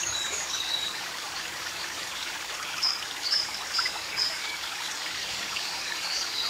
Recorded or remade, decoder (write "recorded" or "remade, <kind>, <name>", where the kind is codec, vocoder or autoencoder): remade, codec, DAC